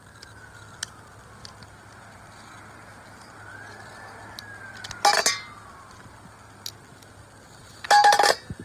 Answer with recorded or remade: recorded